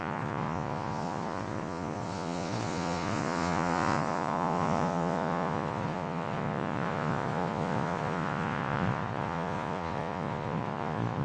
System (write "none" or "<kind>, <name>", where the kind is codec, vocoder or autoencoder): vocoder, Vocos